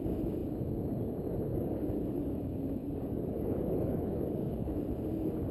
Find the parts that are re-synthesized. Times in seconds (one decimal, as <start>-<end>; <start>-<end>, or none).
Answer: 1.5-2.4; 2.8-4.8

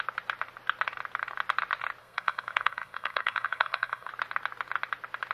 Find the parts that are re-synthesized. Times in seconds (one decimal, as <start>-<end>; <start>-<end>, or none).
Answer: 2.0-4.1

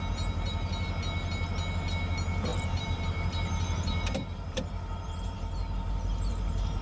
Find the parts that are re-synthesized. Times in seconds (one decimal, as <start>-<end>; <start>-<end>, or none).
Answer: 2.5-6.8

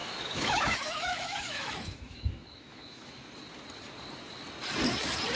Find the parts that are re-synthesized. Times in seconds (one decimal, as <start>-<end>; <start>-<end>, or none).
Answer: 0.0-3.2

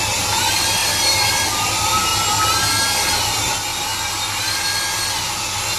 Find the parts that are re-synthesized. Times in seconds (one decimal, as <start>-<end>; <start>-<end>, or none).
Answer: 0.0-2.1; 3.1-3.7; 4.4-5.8

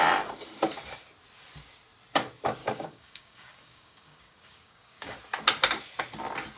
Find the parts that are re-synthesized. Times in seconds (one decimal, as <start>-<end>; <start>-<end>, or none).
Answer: 2.6-5.2

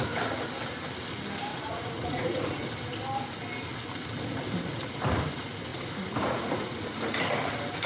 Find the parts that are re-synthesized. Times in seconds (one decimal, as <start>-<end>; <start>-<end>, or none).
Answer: 1.5-2.7; 5.7-6.9